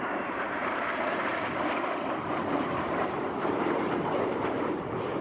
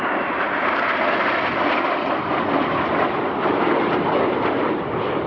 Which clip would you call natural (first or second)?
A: second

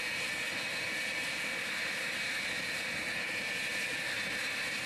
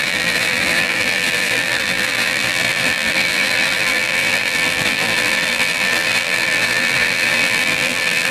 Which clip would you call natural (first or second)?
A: first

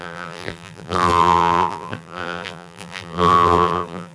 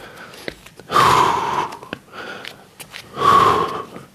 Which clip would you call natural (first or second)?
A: second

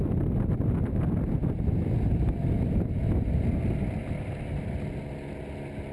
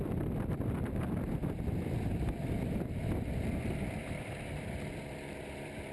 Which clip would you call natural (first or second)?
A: first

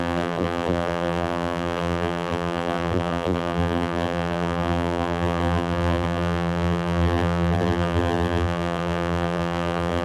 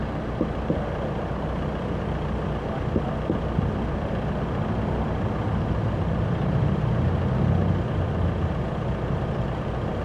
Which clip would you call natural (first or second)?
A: second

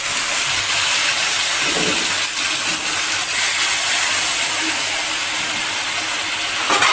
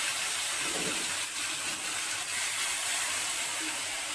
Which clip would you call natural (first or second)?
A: first